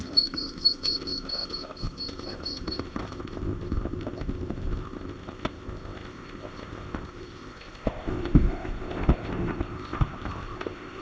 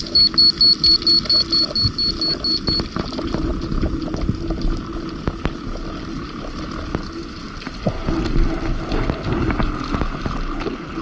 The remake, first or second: first